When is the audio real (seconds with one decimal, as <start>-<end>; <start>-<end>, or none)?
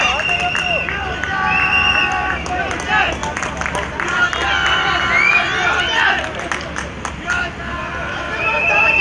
0.0-9.0